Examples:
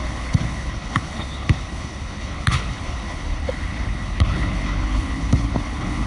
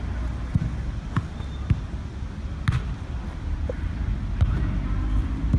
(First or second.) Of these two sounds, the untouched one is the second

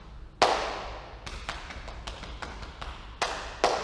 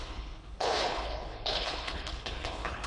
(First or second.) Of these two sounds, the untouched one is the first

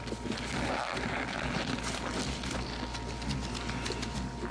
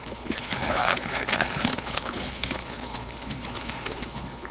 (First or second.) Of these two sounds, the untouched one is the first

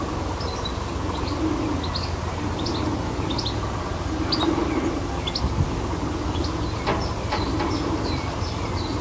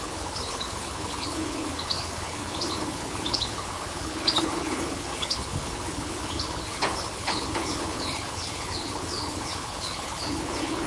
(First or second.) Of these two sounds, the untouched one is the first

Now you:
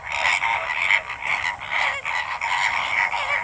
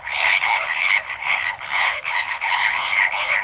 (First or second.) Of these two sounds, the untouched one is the first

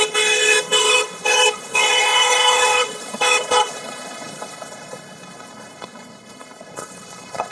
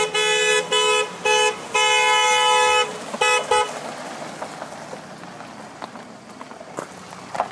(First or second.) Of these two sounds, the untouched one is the second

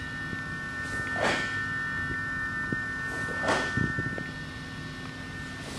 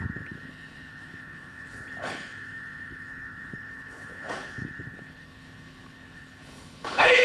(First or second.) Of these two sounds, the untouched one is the first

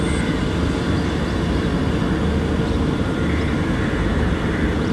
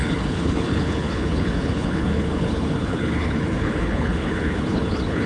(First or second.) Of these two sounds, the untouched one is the first